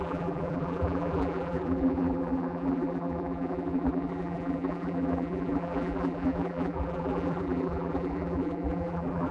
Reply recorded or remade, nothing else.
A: remade